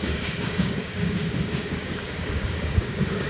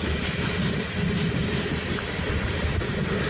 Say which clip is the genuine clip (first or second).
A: second